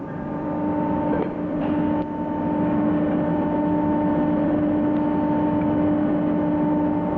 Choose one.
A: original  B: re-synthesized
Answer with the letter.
B